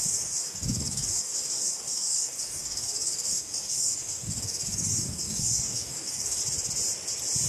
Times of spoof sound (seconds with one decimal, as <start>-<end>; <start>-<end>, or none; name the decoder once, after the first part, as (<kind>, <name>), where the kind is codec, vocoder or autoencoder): 0.0-6.4 (codec, DAC)